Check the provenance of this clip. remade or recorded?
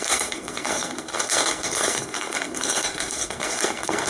remade